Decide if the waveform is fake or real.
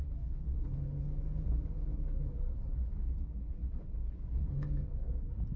fake